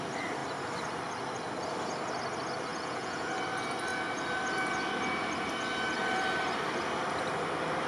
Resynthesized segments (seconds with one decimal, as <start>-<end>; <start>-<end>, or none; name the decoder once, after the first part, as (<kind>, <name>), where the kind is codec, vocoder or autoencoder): 2.7-3.3 (vocoder, Vocos)